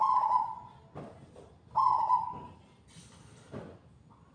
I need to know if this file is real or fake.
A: real